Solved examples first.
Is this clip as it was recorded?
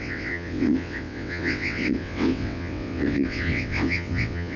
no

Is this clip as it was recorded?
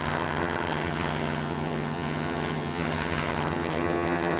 no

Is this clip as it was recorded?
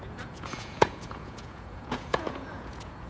no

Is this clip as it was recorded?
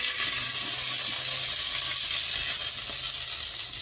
yes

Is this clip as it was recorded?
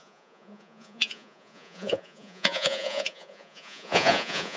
no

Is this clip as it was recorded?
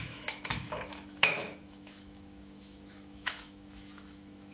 no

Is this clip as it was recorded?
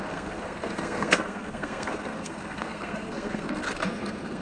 no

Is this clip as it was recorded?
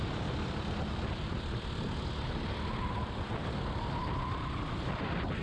yes